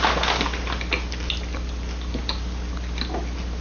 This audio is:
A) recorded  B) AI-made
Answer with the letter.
A